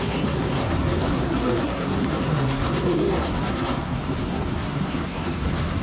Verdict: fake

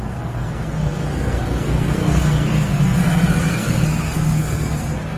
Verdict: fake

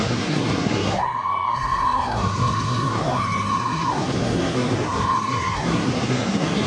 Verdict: fake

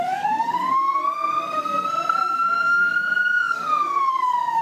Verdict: fake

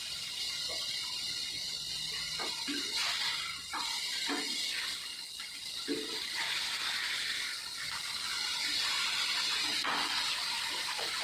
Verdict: real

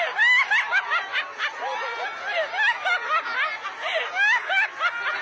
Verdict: real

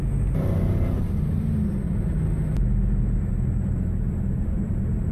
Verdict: real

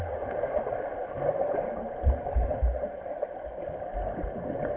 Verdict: real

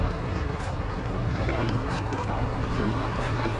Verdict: fake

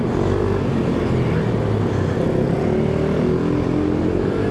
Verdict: real